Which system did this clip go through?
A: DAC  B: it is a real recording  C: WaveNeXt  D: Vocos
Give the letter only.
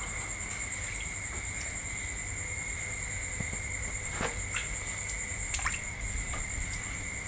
B